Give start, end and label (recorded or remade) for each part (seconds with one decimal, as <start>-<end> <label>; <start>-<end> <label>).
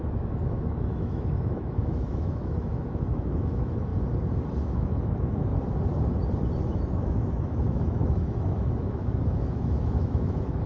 0.0-3.9 remade; 3.9-4.6 recorded; 4.6-5.5 remade; 5.5-6.6 recorded; 6.6-10.7 remade